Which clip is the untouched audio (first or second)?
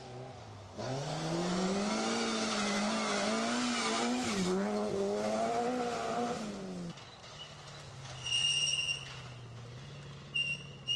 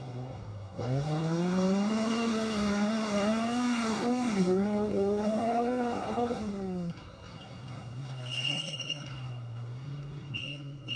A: first